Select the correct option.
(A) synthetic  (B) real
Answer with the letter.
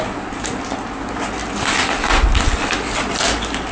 B